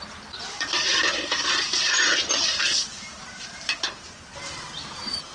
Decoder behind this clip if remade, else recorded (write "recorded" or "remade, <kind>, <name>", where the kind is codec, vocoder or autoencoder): remade, vocoder, BigVGAN v2